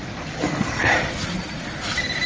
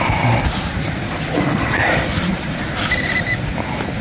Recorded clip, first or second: first